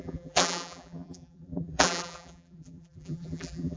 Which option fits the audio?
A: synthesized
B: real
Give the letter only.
A